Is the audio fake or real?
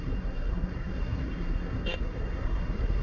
fake